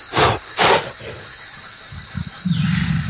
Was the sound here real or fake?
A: real